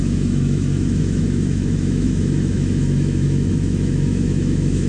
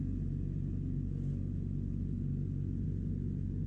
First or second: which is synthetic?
first